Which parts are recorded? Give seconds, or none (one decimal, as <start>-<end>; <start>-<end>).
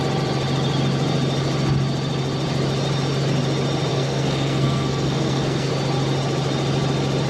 0.0-3.9; 5.7-7.3